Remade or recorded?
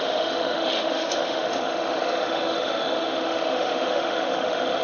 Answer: remade